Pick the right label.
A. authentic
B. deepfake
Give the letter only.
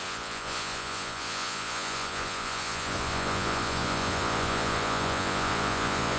B